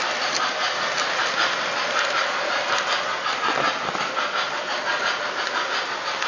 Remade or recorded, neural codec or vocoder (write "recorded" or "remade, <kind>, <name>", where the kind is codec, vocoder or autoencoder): recorded